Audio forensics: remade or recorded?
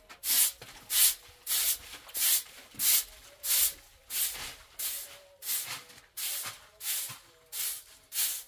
recorded